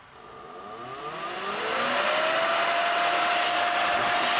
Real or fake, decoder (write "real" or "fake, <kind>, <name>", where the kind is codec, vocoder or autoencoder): real